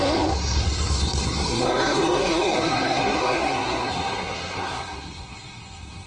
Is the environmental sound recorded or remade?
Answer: remade